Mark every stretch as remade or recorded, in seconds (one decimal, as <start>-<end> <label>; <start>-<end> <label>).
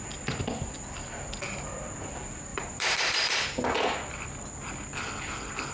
0.0-2.5 recorded; 2.5-3.4 remade; 3.4-5.7 recorded